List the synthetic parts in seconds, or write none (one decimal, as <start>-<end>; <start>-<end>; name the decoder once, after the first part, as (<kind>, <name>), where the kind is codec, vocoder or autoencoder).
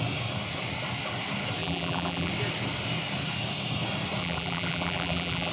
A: 1.6-2.3 (vocoder, BigVGAN v2); 4.2-5.5